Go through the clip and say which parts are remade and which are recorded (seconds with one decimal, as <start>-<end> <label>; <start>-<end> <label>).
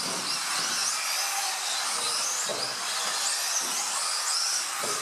0.0-5.0 recorded